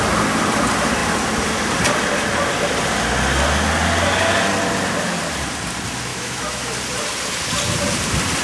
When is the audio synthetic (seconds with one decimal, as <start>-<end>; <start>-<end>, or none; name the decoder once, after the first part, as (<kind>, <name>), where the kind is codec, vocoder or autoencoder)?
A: 6.1-6.7 (autoencoder, DAC-VAE)